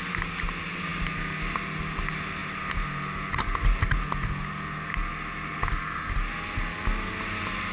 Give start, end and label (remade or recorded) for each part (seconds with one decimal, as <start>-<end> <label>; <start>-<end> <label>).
0.0-7.7 recorded